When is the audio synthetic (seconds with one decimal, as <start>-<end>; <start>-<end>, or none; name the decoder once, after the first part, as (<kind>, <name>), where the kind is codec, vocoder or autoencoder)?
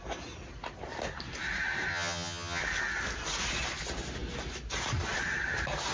1.9-2.6 (vocoder, HiFi-GAN)